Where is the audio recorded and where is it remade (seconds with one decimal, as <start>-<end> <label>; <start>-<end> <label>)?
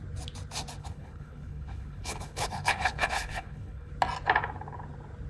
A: 0.0-0.8 recorded; 0.8-3.9 remade; 3.9-5.3 recorded